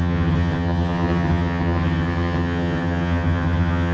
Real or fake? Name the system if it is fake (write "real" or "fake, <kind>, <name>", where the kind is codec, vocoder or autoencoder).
fake, vocoder, HiFi-GAN